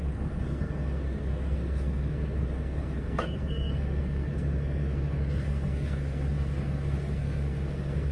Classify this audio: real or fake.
fake